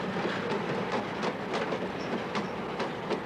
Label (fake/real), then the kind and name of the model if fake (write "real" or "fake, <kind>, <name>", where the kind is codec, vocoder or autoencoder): real